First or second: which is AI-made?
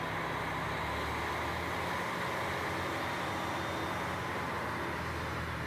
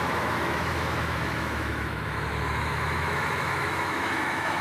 second